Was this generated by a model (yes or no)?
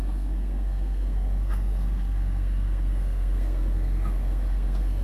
yes